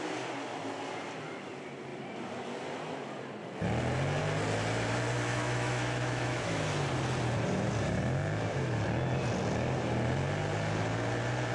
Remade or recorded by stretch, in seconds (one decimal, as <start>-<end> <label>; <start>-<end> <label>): 0.0-5.3 recorded; 5.3-6.6 remade; 6.6-11.5 recorded